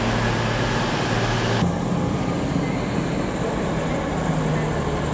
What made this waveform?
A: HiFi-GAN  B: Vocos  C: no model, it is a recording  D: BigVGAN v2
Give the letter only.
C